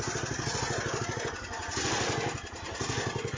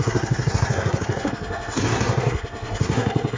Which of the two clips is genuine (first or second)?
first